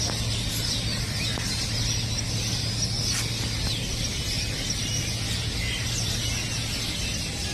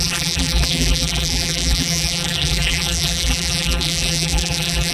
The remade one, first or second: second